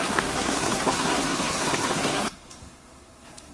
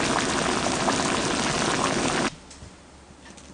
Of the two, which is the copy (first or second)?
first